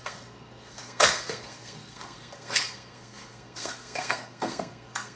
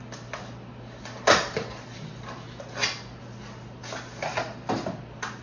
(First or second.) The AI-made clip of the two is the first